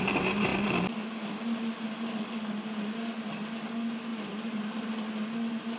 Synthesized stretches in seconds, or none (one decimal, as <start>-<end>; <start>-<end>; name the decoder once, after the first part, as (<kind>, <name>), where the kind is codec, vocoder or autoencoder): none